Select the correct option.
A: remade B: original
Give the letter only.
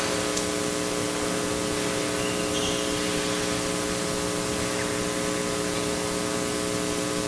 B